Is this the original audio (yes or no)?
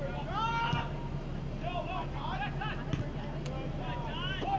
yes